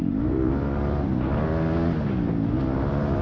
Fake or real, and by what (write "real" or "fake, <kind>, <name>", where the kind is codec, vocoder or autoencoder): real